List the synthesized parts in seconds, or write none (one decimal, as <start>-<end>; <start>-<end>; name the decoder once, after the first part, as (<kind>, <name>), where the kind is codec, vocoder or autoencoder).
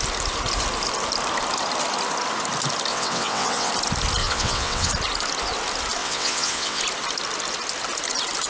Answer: 2.9-3.7 (vocoder, WaveNeXt); 4.2-4.9; 6.0-6.8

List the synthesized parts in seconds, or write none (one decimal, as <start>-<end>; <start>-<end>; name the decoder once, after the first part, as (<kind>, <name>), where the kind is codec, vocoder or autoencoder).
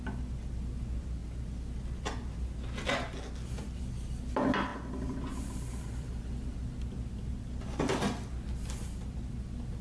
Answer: none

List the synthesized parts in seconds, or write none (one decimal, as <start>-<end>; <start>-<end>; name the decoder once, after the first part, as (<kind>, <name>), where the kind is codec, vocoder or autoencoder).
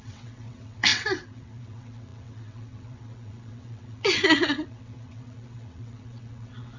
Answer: 0.0-6.8 (vocoder, WaveNeXt)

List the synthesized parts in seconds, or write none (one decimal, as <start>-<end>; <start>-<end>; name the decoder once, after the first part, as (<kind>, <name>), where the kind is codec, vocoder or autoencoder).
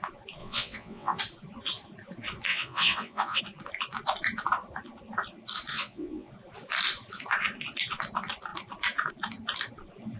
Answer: 0.4-1.2 (vocoder, WaveNeXt); 2.5-3.4; 5.7-6.3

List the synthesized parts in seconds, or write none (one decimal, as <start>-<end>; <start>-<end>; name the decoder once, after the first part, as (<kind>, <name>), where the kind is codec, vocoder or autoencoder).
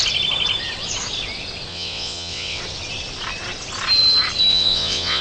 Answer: 1.7-2.6 (vocoder, WaveNeXt); 4.5-5.2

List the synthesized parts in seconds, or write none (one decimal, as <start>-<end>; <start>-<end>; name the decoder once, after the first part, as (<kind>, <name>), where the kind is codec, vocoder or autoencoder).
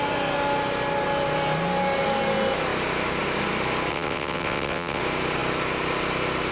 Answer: 3.9-5.0 (vocoder, WaveNeXt)